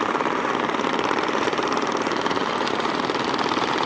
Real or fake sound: fake